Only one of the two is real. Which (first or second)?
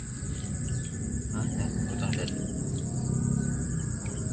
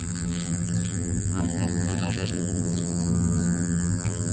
first